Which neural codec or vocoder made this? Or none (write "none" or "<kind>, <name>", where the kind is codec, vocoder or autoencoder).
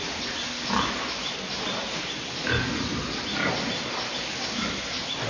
none